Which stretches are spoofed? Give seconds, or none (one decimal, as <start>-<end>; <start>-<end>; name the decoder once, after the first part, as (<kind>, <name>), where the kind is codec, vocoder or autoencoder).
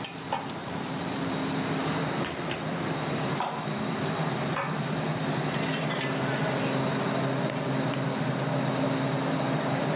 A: 0.6-1.2 (vocoder, BigVGAN v2)